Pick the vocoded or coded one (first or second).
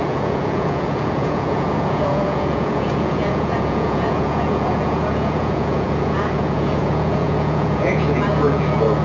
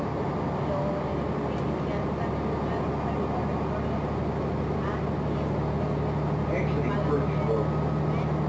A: first